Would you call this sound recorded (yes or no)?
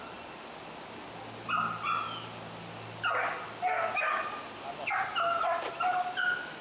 yes